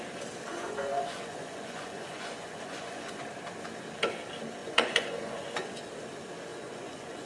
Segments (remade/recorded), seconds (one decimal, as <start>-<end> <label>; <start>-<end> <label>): 0.0-0.5 recorded; 0.5-3.2 remade; 3.2-4.6 recorded; 4.6-5.8 remade; 5.8-6.5 recorded; 6.5-7.3 remade